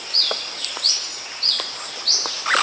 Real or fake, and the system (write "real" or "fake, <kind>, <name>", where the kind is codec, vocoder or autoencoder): real